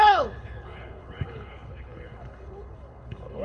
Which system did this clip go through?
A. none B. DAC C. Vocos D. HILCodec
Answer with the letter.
D